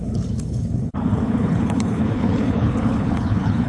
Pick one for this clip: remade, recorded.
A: remade